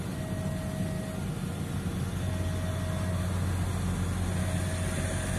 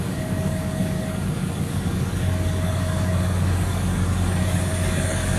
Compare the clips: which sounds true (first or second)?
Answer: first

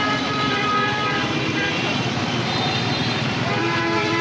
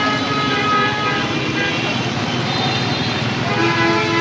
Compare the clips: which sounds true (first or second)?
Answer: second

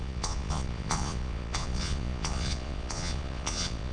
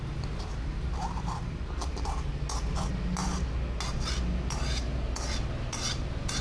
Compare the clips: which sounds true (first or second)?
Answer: second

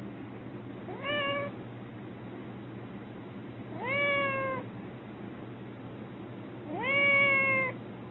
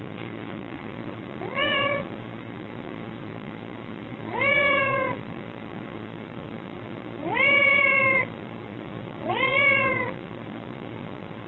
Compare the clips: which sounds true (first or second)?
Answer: first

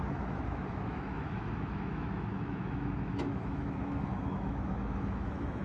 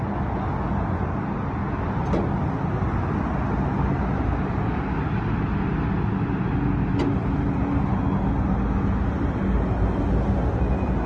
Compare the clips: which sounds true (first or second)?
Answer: second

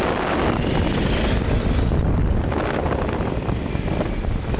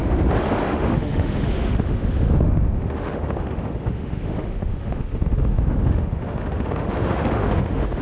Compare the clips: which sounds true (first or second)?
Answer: first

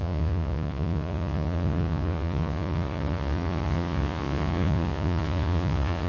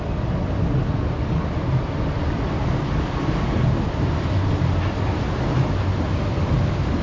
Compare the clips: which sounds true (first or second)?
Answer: second